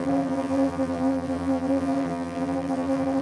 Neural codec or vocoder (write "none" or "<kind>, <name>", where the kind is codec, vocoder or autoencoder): vocoder, BigVGAN v2